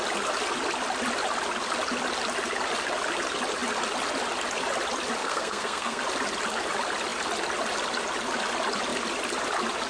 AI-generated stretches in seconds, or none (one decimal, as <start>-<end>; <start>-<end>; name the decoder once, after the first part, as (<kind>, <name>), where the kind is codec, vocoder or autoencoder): 5.2-6.0 (codec, SNAC)